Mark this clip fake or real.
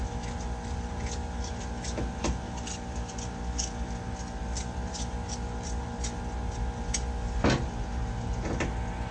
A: real